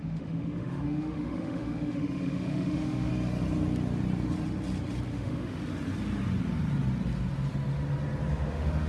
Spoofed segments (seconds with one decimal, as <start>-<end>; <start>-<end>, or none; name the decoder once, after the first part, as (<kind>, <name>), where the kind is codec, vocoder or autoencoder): 0.0-3.1 (autoencoder, DAC-VAE); 5.1-5.6; 8.3-8.9